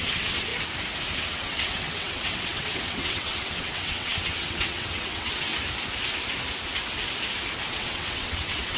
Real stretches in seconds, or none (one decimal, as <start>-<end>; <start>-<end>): 0.5-1.2; 5.5-7.7